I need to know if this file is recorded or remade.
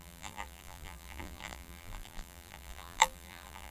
remade